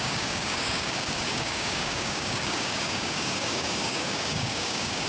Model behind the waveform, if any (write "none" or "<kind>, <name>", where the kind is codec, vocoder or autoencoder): codec, DAC